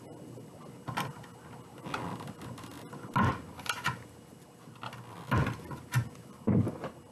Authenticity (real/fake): real